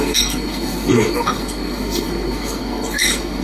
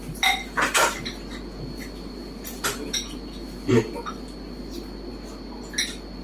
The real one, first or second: second